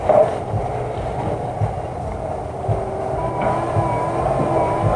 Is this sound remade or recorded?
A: recorded